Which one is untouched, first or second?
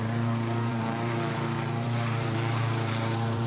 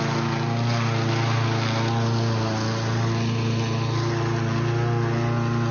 second